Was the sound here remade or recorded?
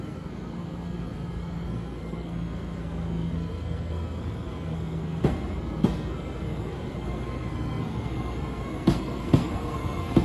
remade